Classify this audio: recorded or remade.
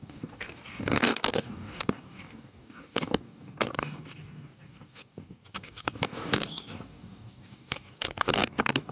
remade